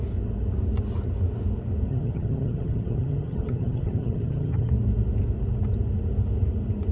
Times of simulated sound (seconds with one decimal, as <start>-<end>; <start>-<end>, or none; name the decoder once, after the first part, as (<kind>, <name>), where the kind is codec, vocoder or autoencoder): 1.9-4.7 (vocoder, HiFi-GAN)